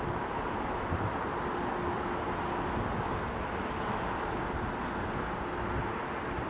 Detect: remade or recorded recorded